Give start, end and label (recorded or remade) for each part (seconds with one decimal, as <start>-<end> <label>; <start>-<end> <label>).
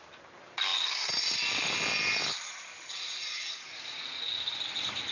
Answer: 0.0-5.1 recorded